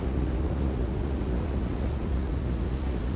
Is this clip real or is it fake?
fake